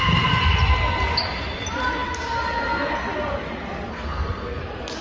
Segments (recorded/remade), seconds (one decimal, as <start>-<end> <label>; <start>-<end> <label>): 0.0-3.9 recorded; 3.9-4.6 remade; 4.6-5.0 recorded